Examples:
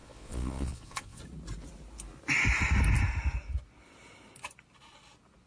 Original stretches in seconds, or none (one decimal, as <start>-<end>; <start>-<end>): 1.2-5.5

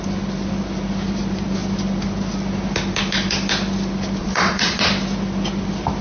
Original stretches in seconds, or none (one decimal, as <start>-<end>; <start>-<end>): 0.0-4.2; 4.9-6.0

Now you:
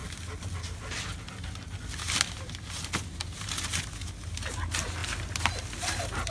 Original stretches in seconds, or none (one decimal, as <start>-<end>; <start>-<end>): 0.0-6.3

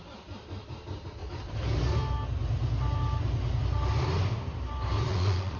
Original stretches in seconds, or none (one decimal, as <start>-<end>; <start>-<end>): 0.0-5.1

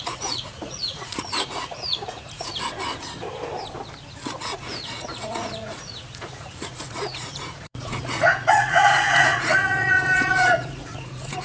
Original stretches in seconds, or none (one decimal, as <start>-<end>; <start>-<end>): 2.5-4.4